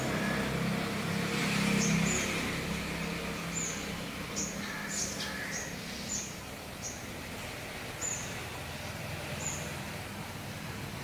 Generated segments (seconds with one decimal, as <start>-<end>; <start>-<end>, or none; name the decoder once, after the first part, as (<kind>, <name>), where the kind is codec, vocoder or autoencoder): none